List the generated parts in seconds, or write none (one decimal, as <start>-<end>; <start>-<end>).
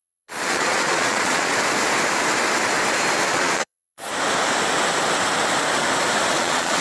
0.0-1.5; 3.3-4.1; 6.3-6.8